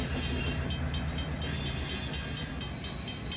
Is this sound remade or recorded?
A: recorded